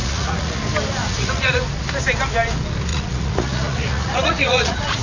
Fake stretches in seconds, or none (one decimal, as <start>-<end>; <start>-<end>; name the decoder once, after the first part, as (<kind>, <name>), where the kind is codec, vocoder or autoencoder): 0.0-0.6 (vocoder, Vocos); 1.0-1.6; 2.9-5.0